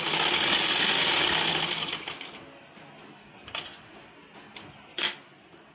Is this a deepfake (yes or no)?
no